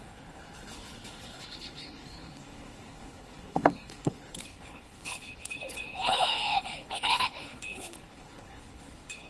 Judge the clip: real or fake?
fake